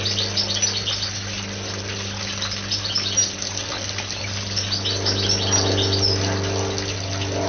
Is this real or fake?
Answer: real